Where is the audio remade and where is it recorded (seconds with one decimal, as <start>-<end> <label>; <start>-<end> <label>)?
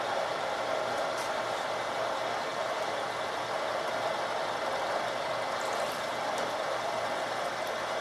0.0-8.0 recorded